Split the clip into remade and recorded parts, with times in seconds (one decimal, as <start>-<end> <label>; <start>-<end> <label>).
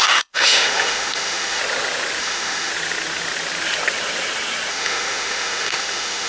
0.0-1.6 remade; 1.6-2.2 recorded; 2.2-2.7 remade; 2.7-4.7 recorded; 4.7-6.3 remade